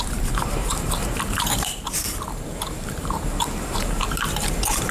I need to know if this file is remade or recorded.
remade